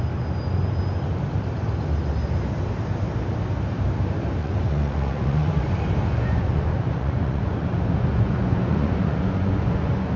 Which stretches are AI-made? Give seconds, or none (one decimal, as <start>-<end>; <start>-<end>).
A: 4.4-5.6; 6.1-10.2